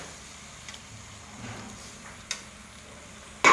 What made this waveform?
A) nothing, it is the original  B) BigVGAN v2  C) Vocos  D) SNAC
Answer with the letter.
A